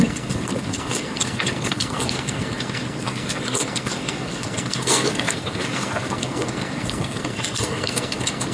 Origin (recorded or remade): remade